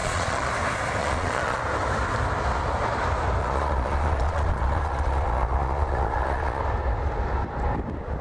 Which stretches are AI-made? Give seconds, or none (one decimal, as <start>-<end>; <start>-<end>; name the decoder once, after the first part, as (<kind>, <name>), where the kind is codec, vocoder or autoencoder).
0.0-0.5 (vocoder, Vocos); 1.0-1.6; 3.4-6.6